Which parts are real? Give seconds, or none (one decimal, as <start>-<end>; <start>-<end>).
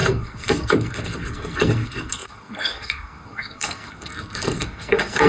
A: none